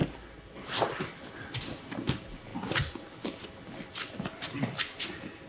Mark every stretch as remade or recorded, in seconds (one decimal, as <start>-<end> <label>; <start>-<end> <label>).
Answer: 0.0-5.5 recorded